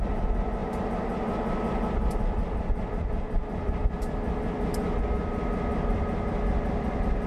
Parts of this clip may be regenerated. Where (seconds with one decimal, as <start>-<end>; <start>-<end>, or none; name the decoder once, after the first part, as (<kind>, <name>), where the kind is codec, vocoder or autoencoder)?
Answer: 0.6-5.0 (vocoder, BigVGAN v2)

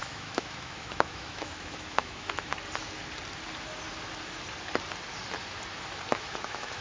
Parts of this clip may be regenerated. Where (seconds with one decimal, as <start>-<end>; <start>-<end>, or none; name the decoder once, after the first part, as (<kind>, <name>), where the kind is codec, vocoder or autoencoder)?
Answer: 0.0-2.5 (autoencoder, DAC-VAE); 6.1-6.8

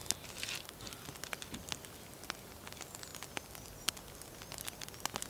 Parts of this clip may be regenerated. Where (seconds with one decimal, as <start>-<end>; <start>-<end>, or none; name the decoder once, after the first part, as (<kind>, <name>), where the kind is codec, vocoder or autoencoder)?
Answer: none

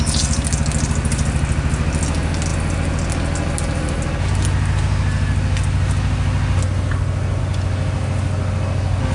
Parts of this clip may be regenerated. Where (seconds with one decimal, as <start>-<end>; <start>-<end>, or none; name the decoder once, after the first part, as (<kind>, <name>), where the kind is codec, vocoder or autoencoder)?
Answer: none